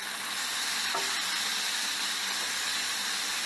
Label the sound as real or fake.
real